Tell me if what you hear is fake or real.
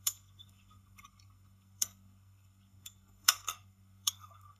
fake